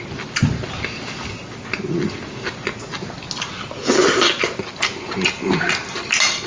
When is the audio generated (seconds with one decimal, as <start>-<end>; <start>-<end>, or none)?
none